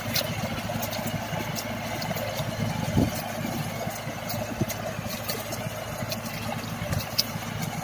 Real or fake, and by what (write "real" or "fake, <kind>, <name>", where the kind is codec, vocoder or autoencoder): real